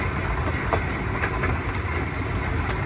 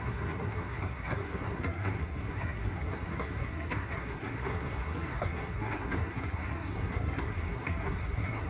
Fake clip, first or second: second